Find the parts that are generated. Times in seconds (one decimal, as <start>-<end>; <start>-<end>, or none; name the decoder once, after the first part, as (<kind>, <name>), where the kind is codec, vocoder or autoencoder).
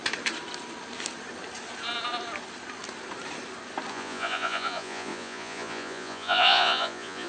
3.9-7.3 (vocoder, Vocos)